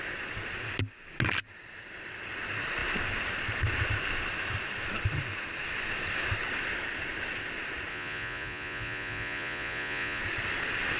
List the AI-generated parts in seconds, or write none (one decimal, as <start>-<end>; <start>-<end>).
7.9-10.2